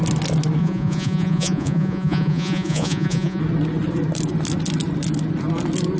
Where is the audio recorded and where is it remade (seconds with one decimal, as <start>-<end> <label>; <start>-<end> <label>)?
0.0-0.6 recorded; 0.6-3.4 remade; 3.4-6.0 recorded